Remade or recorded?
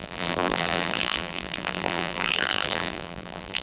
remade